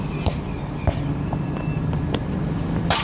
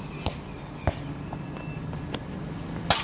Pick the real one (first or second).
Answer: second